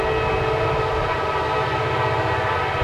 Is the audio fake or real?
real